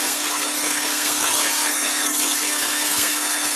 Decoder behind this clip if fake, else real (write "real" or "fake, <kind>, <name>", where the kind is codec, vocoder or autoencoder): fake, codec, SNAC